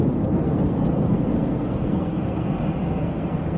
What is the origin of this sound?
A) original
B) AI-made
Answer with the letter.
B